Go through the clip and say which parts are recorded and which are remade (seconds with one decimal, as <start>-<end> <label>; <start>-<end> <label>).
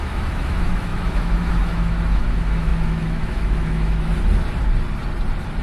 0.0-4.1 remade; 4.1-5.6 recorded